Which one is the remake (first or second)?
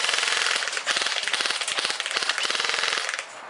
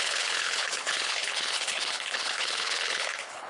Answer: second